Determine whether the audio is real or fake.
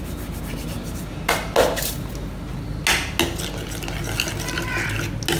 real